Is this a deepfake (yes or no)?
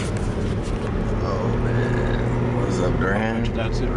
no